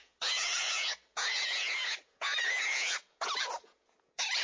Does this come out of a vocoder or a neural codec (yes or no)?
yes